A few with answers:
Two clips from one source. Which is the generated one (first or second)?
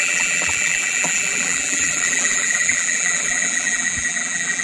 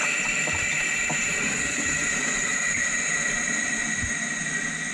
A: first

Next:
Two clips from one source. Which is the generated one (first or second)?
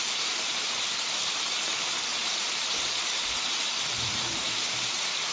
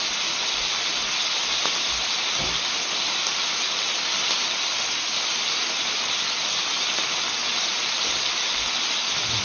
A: first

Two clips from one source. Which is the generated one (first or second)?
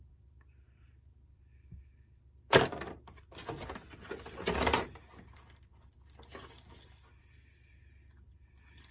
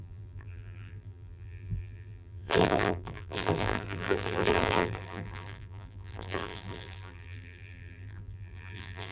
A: second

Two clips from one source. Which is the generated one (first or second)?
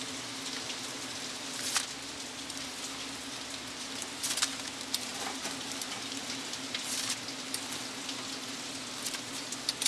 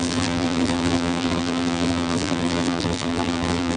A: second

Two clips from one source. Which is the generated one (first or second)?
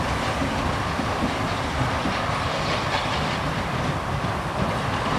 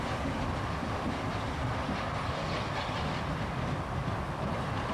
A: first